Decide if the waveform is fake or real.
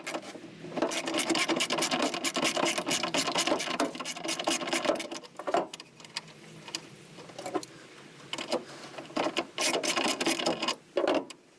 real